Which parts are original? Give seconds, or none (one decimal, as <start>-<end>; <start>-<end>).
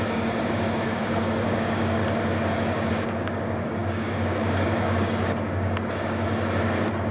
2.0-2.9